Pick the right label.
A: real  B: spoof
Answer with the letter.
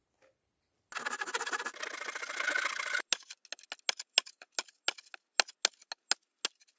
A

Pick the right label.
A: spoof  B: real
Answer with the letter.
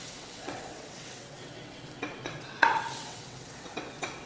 A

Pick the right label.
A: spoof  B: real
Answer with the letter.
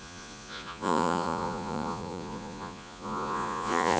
A